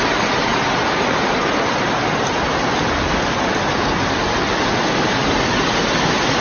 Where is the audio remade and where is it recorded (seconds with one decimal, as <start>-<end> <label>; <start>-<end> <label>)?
0.0-6.4 recorded